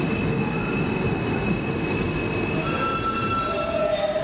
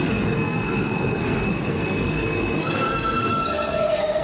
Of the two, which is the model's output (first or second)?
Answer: second